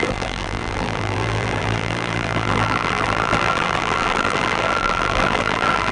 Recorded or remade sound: remade